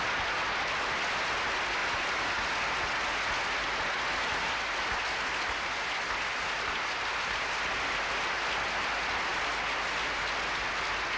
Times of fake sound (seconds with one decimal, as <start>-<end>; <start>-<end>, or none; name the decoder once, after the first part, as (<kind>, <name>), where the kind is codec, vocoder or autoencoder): none